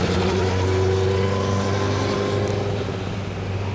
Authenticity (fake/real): real